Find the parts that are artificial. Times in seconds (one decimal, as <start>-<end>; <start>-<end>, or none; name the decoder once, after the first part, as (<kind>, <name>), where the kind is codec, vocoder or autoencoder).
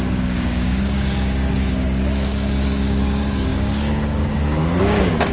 0.0-5.3 (codec, DAC)